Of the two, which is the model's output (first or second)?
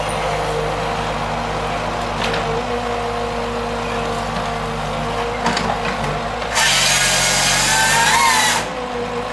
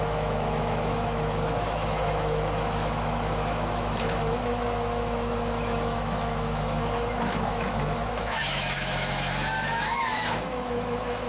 second